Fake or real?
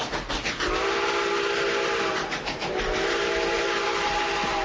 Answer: real